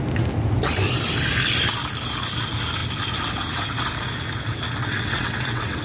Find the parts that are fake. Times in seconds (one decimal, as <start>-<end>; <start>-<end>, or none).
4.8-5.8